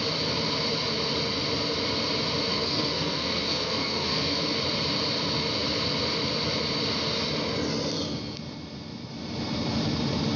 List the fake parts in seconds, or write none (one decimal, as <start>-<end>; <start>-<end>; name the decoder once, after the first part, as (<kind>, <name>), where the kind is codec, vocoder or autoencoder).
2.5-4.4 (codec, SNAC)